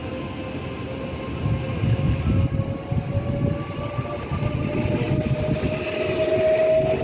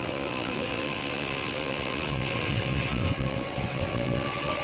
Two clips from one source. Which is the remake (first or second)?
second